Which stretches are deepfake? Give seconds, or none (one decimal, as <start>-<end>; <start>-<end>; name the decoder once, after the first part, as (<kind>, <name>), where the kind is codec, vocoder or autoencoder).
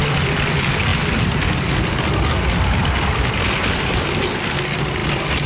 none